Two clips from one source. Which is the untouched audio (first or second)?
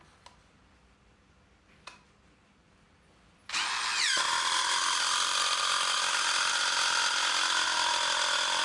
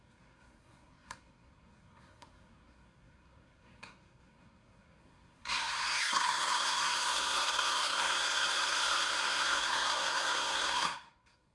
first